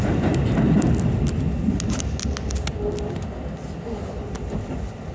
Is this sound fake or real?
real